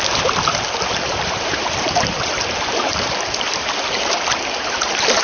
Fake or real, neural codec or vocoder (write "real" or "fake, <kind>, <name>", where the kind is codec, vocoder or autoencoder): fake, vocoder, BigVGAN v2